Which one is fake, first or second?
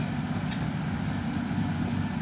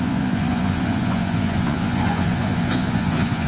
second